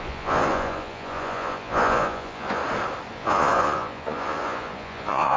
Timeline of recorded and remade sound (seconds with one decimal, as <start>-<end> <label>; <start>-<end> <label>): 0.0-2.6 remade; 2.6-3.1 recorded; 3.1-5.4 remade